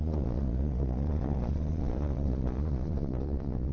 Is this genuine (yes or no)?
no